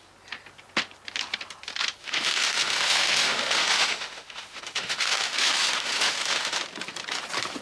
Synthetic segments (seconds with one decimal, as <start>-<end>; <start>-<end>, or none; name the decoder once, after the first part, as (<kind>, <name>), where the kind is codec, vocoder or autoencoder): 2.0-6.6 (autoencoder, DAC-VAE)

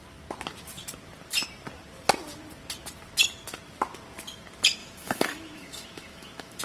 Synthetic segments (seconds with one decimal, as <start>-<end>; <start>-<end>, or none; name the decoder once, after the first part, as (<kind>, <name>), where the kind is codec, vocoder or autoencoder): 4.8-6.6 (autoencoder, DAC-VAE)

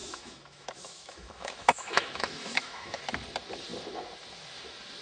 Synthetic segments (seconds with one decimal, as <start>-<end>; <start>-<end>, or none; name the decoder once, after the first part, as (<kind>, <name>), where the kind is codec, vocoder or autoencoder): 0.0-3.0 (autoencoder, DAC-VAE)

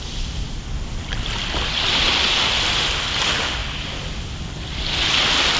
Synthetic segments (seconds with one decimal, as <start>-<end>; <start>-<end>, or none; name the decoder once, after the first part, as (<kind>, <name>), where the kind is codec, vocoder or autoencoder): none

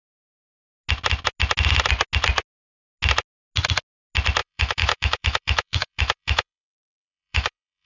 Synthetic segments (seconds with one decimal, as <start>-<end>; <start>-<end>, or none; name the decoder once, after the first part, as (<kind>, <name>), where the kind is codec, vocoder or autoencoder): 4.4-7.9 (autoencoder, DAC-VAE)

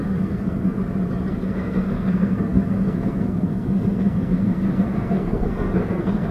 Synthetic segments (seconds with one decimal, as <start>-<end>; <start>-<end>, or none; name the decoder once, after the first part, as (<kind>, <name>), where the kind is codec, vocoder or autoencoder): 0.0-0.8 (codec, SNAC); 1.3-6.3

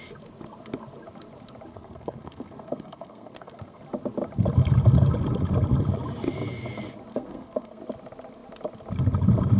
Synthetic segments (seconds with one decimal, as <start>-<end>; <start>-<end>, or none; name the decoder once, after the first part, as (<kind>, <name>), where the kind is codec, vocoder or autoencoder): 1.7-3.8 (codec, SNAC); 7.1-7.8

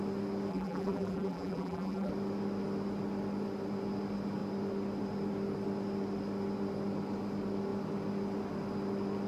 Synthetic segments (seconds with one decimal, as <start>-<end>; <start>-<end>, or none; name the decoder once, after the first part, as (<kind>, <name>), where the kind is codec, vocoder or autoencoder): 0.5-2.1 (vocoder, BigVGAN v2)